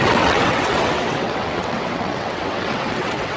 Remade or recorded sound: remade